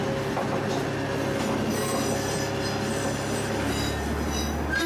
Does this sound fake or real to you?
real